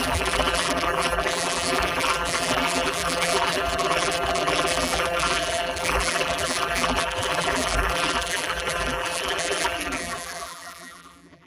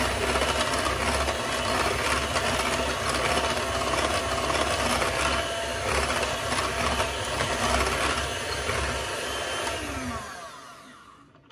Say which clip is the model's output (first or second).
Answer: first